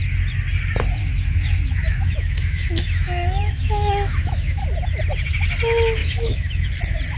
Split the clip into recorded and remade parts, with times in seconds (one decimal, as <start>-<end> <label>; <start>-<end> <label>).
0.0-1.0 recorded; 1.0-4.6 remade; 4.6-6.0 recorded; 6.0-6.8 remade; 6.8-7.2 recorded